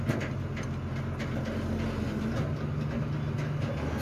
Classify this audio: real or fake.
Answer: real